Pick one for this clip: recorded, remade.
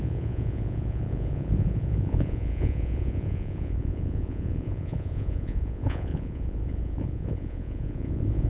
remade